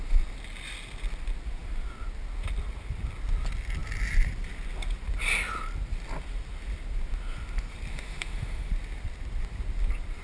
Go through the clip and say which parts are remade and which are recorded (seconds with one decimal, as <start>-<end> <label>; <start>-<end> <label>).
0.0-7.9 recorded; 7.9-8.7 remade; 8.7-10.2 recorded